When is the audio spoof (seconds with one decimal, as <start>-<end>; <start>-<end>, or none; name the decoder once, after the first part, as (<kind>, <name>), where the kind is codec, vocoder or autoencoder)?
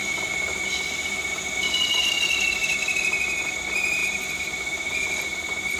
none